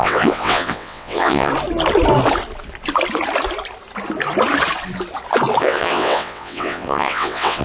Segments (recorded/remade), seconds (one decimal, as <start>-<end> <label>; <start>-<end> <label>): 0.0-1.5 remade; 1.5-5.6 recorded; 5.6-7.6 remade